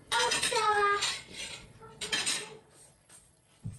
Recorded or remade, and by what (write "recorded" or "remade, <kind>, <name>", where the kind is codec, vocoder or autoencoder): remade, vocoder, Vocos